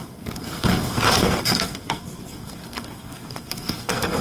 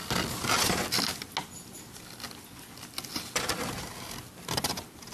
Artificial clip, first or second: first